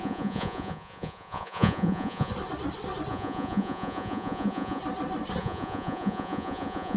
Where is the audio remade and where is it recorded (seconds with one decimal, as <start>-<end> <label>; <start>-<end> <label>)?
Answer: 0.0-2.3 remade; 2.3-3.1 recorded; 3.1-4.8 remade; 4.8-5.4 recorded; 5.4-7.0 remade